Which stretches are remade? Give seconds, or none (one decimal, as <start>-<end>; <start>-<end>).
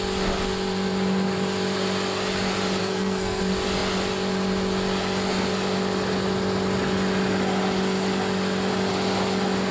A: 2.8-3.4